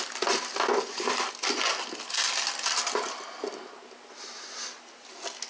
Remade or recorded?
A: recorded